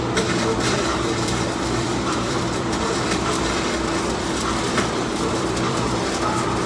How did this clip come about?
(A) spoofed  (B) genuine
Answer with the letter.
A